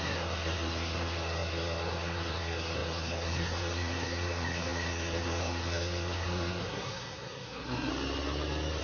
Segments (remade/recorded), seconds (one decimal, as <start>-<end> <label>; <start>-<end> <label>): 0.0-7.9 remade; 7.9-8.8 recorded